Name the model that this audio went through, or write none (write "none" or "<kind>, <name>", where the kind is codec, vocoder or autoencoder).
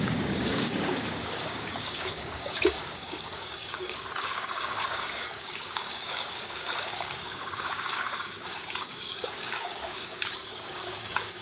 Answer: codec, DAC